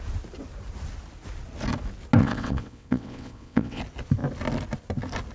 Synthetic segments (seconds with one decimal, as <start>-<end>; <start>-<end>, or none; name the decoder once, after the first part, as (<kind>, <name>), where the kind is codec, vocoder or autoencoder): 2.2-3.8 (vocoder, WaveNeXt)